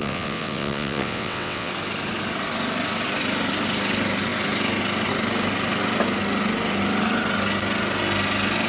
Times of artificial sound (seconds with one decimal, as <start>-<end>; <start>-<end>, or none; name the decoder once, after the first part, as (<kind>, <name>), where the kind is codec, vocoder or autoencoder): 0.0-1.7 (vocoder, WaveNeXt)